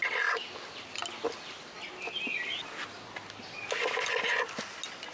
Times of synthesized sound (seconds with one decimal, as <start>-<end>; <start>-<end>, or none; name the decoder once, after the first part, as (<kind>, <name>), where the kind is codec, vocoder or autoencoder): none